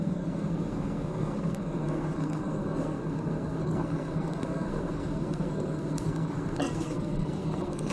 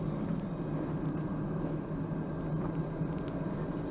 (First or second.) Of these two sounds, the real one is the second